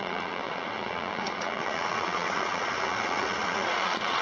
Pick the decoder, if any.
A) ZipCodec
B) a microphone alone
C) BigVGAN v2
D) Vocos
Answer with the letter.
D